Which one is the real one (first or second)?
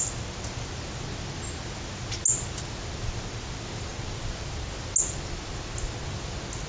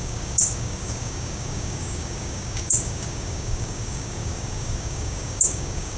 first